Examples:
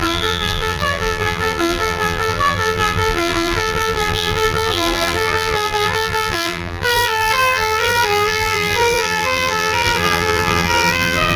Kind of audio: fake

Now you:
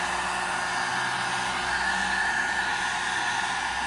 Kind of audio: real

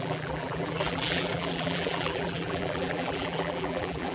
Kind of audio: fake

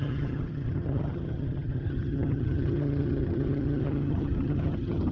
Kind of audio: fake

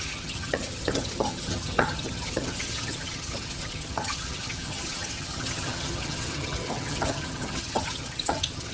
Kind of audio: fake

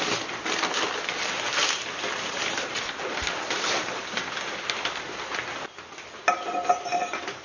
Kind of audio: real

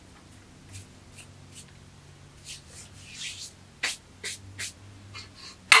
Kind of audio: real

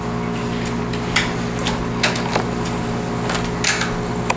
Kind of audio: real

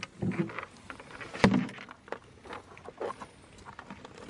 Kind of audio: real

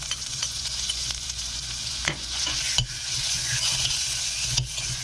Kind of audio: fake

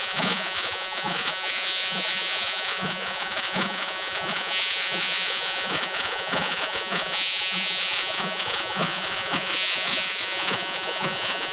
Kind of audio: fake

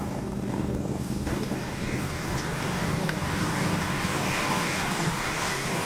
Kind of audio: fake